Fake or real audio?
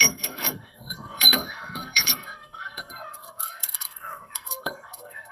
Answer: fake